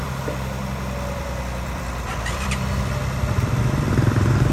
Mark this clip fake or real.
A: fake